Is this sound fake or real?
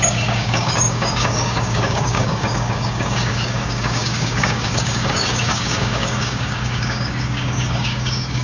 fake